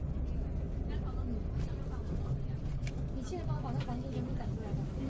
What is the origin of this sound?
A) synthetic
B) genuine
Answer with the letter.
B